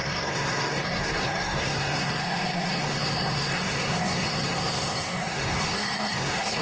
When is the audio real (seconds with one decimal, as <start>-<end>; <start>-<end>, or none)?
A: none

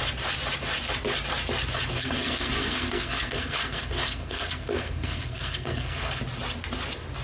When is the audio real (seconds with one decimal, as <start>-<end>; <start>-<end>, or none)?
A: 0.0-1.9; 6.2-7.2

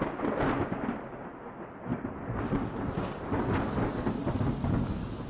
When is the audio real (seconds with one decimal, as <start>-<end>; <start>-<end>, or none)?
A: 0.0-5.3

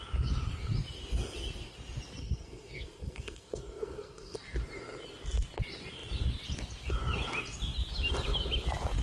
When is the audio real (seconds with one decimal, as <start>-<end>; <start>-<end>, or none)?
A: 0.0-2.2; 4.4-9.0